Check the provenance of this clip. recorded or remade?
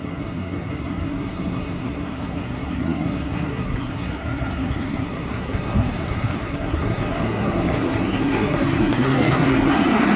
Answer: remade